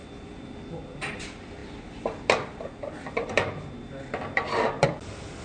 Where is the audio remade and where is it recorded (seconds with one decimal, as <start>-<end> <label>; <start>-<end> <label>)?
0.0-5.4 recorded